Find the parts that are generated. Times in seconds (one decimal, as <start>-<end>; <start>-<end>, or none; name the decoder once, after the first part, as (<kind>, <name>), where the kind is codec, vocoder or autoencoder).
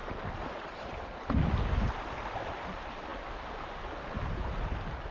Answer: none